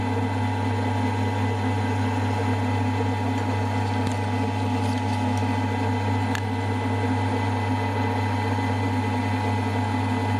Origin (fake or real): real